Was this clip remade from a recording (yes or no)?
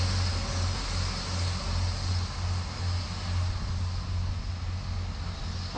no